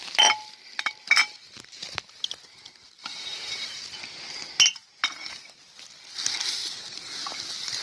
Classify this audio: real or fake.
real